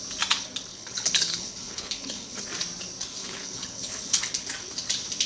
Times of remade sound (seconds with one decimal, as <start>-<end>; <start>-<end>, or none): 0.7-2.4; 3.2-4.2